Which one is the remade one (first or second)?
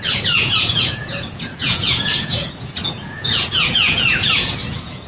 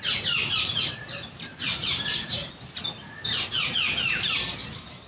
first